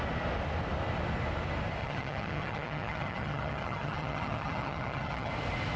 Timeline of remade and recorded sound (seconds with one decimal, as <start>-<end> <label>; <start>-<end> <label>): 0.0-1.8 recorded; 1.8-5.3 remade; 5.3-5.8 recorded